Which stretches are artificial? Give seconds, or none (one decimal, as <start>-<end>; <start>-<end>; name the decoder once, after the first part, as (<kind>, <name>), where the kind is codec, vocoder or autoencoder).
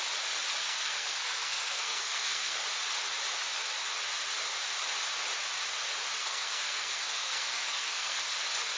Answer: 0.6-2.6 (codec, SNAC); 6.2-8.2